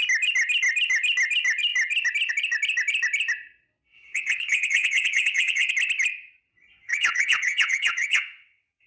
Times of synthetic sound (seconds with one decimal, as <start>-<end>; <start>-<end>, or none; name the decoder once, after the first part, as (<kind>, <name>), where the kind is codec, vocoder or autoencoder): 3.9-5.7 (vocoder, WaveNeXt); 6.8-8.9